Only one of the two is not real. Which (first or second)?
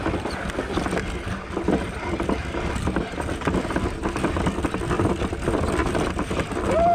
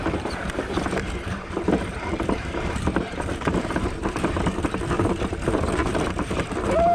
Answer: second